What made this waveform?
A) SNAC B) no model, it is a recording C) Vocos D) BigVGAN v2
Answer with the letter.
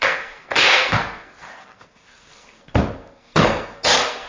A